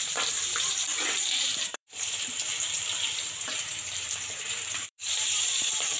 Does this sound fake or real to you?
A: fake